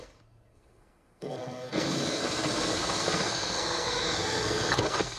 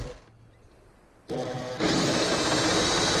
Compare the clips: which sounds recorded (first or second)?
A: second